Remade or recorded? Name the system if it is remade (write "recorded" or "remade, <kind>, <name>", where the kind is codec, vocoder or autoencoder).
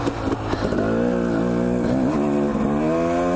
recorded